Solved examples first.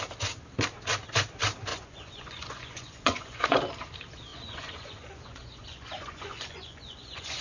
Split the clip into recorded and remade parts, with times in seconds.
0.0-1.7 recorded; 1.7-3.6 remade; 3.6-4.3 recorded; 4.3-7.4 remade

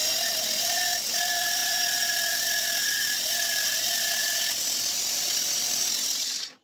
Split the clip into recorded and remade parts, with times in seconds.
0.0-0.5 recorded; 0.5-6.6 remade

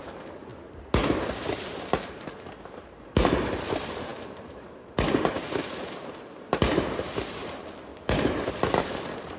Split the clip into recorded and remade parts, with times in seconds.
0.0-0.5 remade; 0.5-1.2 recorded; 1.2-7.9 remade; 7.9-8.8 recorded; 8.8-9.4 remade

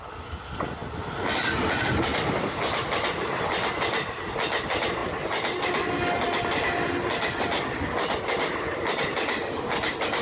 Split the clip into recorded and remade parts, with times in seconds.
0.0-10.2 recorded

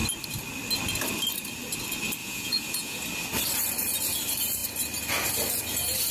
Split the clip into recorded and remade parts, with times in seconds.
0.0-2.2 recorded; 2.2-3.0 remade; 3.0-6.1 recorded

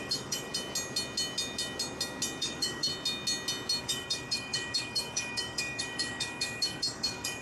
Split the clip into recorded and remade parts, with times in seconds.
0.0-0.5 remade; 0.5-2.4 recorded; 2.4-2.9 remade; 2.9-3.8 recorded; 3.8-7.4 remade

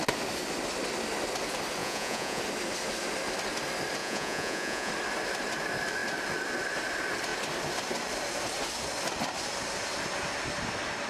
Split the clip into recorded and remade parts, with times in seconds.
0.0-1.8 recorded; 1.8-2.4 remade; 2.4-4.0 recorded; 4.0-4.9 remade; 4.9-11.1 recorded

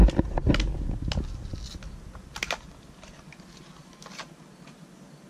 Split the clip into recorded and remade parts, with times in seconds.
0.0-5.3 recorded